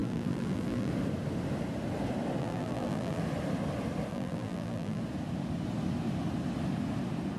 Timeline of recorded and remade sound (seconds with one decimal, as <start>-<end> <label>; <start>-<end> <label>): 0.0-0.9 remade; 0.9-2.4 recorded; 2.4-3.2 remade; 3.2-4.1 recorded; 4.1-5.0 remade; 5.0-7.4 recorded